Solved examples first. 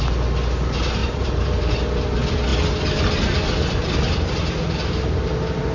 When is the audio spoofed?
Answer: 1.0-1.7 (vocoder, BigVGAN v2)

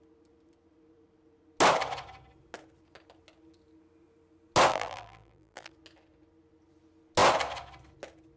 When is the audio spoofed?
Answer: 4.7-5.7 (vocoder, BigVGAN v2)

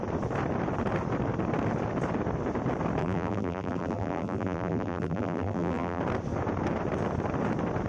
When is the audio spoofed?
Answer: 3.0-6.0 (vocoder, BigVGAN v2)

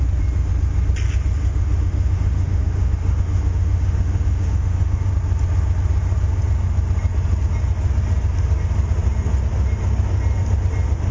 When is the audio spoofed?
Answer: 1.4-5.1 (autoencoder, DAC-VAE)

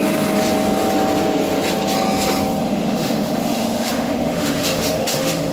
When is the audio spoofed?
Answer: 2.6-5.5 (autoencoder, DAC-VAE)

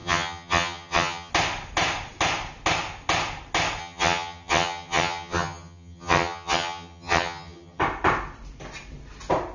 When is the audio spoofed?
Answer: 0.0-1.3 (vocoder, HiFi-GAN); 3.8-7.8